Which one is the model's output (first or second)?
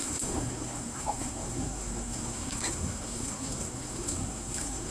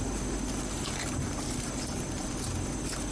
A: first